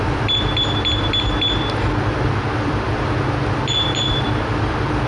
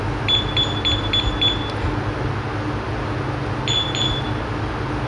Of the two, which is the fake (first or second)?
first